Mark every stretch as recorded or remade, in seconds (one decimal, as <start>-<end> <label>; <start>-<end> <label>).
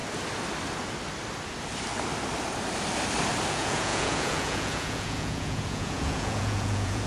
0.0-3.5 recorded; 3.5-7.1 remade